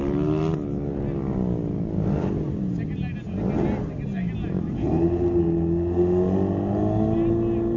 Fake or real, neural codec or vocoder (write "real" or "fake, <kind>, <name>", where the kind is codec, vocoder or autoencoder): real